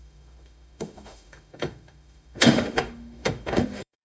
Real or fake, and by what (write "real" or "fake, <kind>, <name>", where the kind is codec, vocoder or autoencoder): fake, autoencoder, DAC-VAE